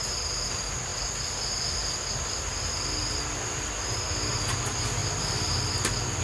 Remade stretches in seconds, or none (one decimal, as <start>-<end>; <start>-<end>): none